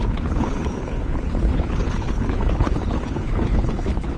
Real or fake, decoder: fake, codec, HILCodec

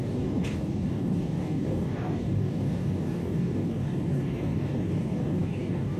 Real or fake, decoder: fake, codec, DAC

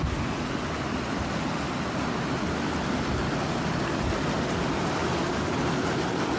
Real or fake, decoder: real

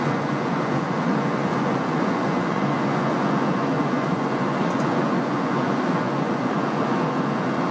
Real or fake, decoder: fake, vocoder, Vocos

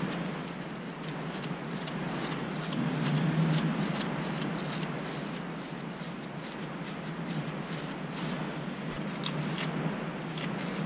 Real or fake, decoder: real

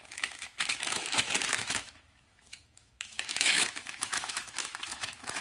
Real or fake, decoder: fake, autoencoder, DAC-VAE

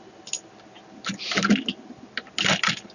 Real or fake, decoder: real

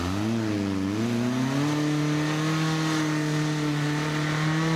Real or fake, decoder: real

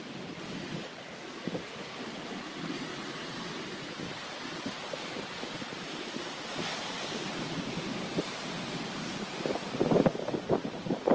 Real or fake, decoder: real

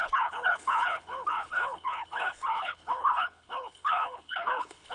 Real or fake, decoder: fake, codec, HILCodec